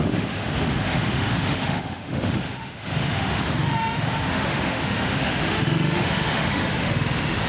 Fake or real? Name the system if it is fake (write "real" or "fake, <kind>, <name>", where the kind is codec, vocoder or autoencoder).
fake, autoencoder, DAC-VAE